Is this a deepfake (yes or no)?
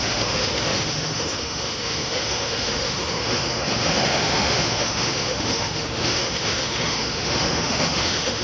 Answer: yes